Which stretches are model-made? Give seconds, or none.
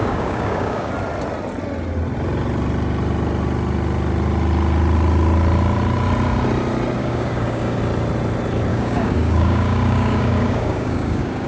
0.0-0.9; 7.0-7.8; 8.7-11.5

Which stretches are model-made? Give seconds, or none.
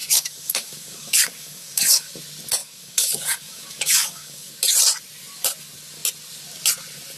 0.0-2.1; 2.6-4.5